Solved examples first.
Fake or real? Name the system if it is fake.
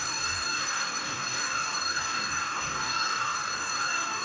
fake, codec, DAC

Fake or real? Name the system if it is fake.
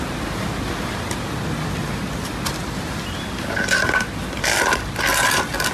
real